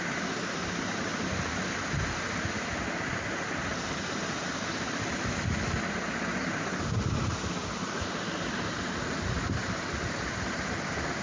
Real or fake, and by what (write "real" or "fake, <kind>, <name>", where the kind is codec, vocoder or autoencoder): real